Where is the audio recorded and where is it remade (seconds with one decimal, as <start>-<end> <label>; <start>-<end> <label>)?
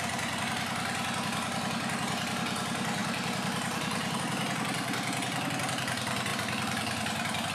0.0-3.0 recorded; 3.0-4.2 remade; 4.2-6.3 recorded; 6.3-7.5 remade